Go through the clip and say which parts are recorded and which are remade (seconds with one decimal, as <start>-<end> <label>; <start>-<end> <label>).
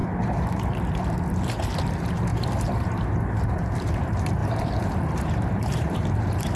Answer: 0.0-6.6 remade